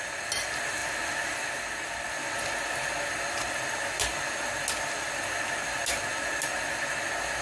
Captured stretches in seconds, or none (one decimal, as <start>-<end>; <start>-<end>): 0.0-7.4